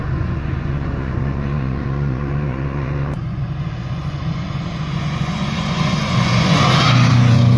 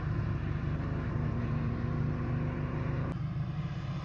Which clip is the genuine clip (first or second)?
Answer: second